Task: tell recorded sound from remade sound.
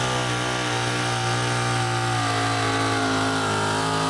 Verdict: recorded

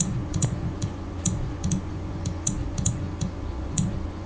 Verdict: remade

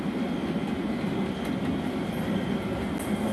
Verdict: recorded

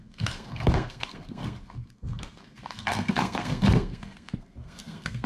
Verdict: remade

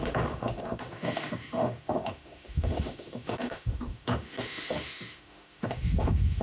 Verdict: remade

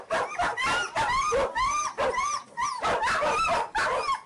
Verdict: recorded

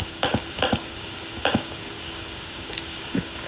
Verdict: remade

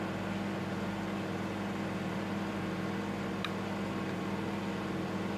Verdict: recorded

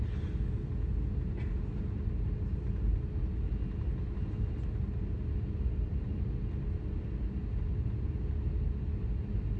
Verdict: recorded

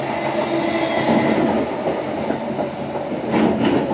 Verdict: recorded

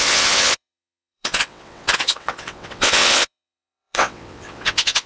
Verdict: remade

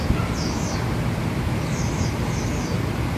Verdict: recorded